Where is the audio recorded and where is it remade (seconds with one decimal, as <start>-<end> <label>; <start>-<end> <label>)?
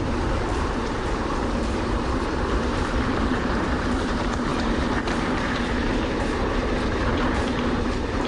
0.0-8.3 remade